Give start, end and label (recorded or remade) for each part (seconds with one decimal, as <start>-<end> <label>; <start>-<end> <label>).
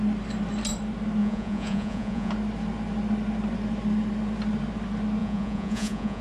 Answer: 0.0-1.2 recorded; 1.2-2.3 remade; 2.3-5.2 recorded; 5.2-6.2 remade